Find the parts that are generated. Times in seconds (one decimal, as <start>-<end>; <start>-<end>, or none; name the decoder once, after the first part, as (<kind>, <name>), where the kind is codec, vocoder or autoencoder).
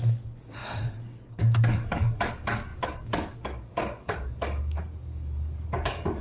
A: 0.0-6.2 (codec, DAC)